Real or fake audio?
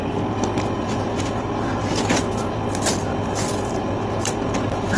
real